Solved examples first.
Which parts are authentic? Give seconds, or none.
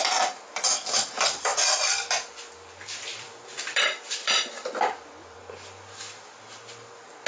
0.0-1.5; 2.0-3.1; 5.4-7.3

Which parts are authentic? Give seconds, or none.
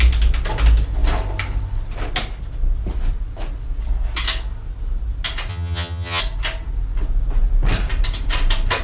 0.0-5.5; 6.2-8.8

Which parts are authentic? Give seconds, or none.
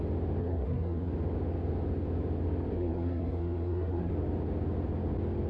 0.0-0.4; 1.1-2.7; 4.1-5.5